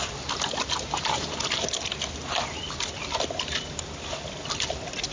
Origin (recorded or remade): recorded